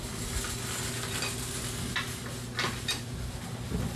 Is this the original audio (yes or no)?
yes